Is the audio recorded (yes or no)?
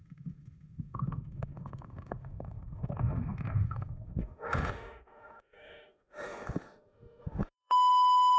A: no